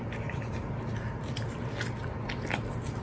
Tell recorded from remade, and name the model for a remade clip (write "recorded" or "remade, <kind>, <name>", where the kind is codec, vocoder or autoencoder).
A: recorded